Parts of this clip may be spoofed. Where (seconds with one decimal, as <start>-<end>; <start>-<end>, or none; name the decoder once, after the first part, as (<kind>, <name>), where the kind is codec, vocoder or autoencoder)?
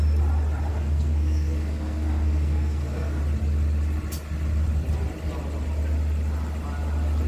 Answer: 0.7-3.2 (codec, SNAC)